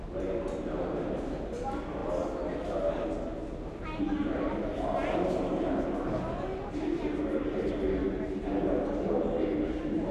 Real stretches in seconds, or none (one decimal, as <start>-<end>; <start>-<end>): 0.0-10.1